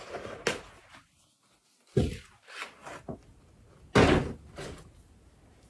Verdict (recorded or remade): recorded